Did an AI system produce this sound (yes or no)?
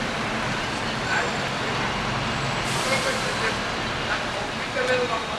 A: no